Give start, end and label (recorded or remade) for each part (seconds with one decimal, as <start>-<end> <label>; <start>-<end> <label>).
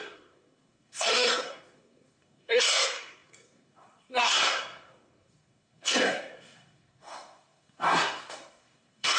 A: 0.0-9.2 remade